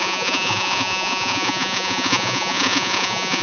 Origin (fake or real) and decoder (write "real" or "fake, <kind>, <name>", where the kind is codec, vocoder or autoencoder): fake, vocoder, Vocos